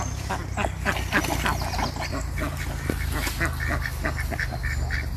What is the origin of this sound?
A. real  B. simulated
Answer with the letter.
A